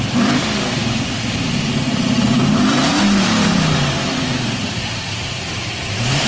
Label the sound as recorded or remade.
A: remade